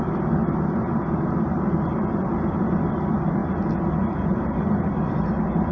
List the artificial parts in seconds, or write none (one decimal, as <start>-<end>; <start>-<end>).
none